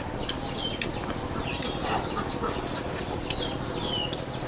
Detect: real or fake real